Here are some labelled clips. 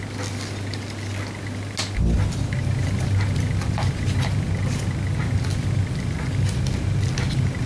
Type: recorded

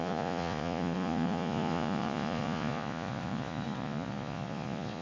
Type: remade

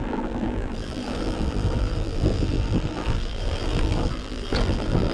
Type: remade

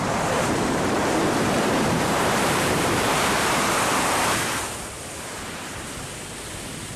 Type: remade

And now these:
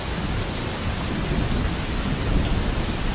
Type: recorded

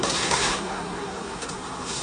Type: remade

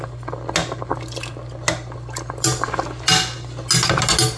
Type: recorded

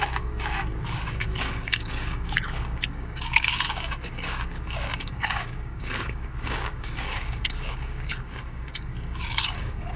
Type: remade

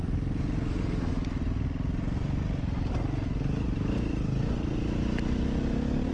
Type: recorded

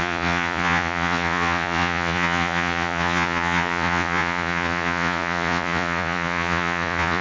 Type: remade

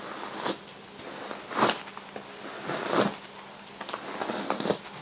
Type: recorded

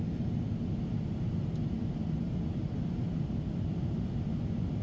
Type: recorded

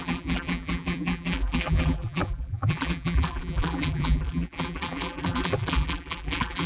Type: remade